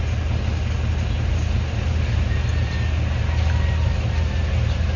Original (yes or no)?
yes